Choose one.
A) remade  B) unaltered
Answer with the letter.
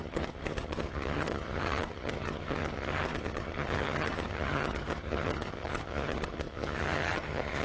A